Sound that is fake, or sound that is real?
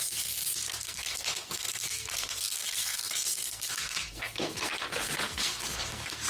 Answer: fake